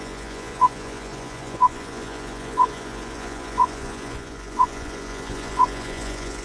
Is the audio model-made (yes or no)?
yes